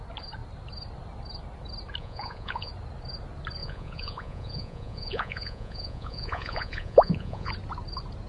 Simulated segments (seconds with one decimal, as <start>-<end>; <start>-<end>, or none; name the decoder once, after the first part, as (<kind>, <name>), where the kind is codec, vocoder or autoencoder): 2.0-2.7 (vocoder, Vocos); 3.6-7.5